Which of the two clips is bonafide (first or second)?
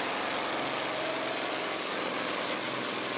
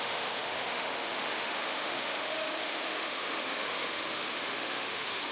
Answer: first